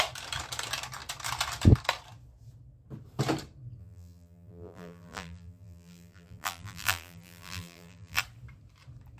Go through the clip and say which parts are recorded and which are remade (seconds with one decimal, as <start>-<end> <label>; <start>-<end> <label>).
0.0-3.8 recorded; 3.8-8.2 remade; 8.2-9.2 recorded

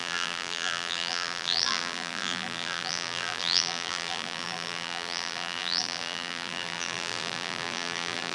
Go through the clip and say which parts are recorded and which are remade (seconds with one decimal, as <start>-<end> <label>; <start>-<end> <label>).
0.0-8.3 remade

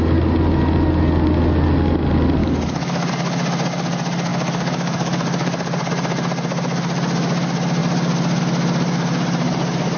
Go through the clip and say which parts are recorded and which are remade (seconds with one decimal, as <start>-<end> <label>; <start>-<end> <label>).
0.0-2.4 recorded; 2.4-3.1 remade; 3.1-4.3 recorded; 4.3-5.9 remade; 5.9-10.0 recorded

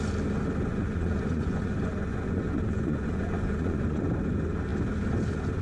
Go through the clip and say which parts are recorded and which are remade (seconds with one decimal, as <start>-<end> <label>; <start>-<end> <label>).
0.0-0.7 recorded; 0.7-4.1 remade; 4.1-5.6 recorded